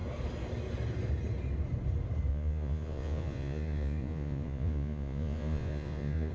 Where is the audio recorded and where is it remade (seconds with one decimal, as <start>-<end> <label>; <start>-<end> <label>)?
0.0-2.3 recorded; 2.3-6.3 remade